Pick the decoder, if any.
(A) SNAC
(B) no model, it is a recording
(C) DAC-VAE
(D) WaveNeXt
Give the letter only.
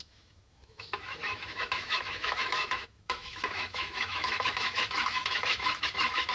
C